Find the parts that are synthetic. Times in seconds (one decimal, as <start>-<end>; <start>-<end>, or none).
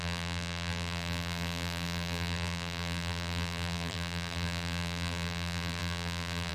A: 0.0-6.5